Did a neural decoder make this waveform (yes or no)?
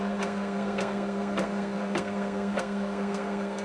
yes